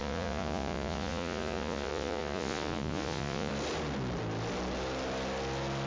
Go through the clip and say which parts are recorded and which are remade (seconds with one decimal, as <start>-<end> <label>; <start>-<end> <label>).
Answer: 0.0-3.5 remade; 3.5-5.9 recorded